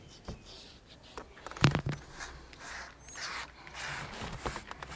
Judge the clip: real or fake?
real